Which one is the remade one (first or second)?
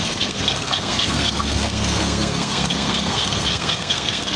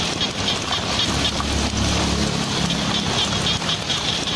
first